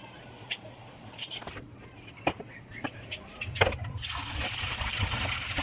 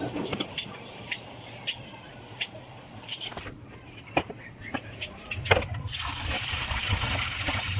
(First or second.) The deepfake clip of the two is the second